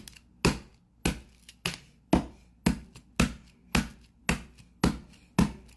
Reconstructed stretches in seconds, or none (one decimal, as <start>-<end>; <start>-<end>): none